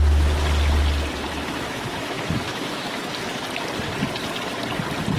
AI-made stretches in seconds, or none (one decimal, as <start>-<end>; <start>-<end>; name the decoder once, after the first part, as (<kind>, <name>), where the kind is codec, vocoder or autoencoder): 1.3-3.1 (autoencoder, DAC-VAE)